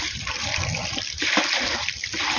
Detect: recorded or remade remade